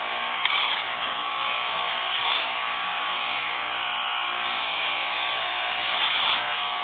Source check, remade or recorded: remade